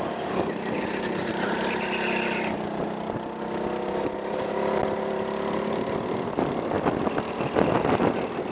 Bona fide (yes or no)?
yes